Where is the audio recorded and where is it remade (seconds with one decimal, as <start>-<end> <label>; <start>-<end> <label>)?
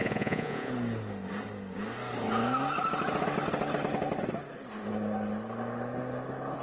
0.0-0.7 remade; 0.7-6.6 recorded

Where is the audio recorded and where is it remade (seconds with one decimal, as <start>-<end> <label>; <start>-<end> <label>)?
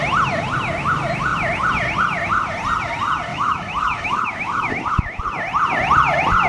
0.0-3.3 recorded; 3.3-5.2 remade; 5.2-6.5 recorded